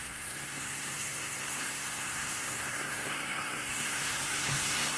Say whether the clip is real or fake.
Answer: fake